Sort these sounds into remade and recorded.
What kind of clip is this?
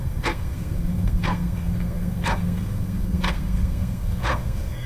remade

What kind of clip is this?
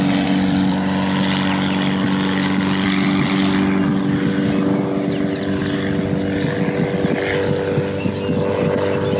recorded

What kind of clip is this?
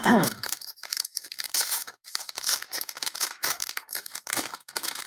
remade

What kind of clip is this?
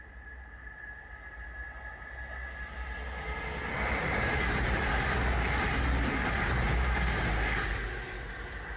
recorded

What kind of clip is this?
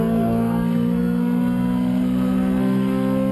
remade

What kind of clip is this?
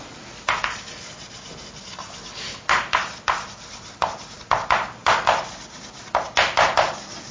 recorded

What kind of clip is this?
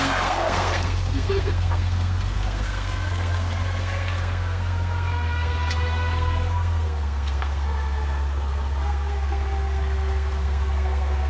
remade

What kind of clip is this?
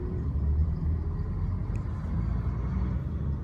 recorded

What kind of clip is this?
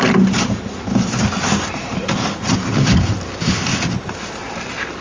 recorded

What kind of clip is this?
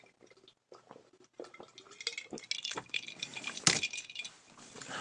recorded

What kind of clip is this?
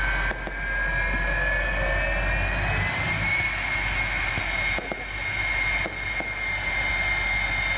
recorded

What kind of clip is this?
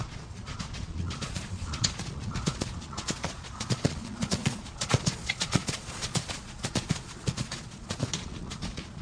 remade